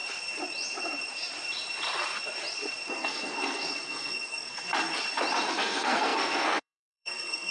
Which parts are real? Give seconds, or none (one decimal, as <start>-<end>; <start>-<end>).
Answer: 0.0-2.9; 4.7-5.5